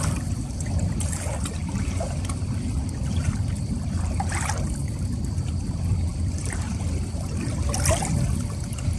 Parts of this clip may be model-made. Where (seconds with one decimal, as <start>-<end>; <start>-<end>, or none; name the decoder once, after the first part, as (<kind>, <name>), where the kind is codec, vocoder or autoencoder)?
6.1-8.0 (vocoder, BigVGAN v2)